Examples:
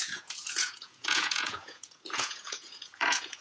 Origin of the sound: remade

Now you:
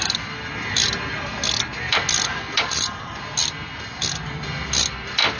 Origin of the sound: recorded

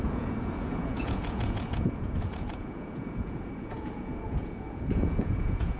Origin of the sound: remade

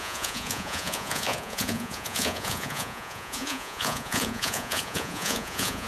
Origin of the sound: remade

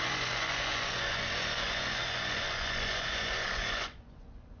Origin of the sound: remade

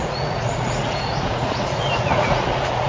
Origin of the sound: remade